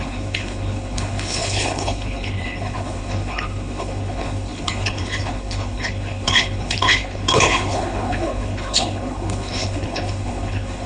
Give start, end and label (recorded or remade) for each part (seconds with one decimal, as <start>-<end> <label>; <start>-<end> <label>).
0.0-10.9 remade